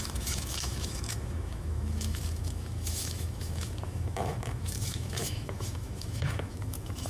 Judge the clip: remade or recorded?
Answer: remade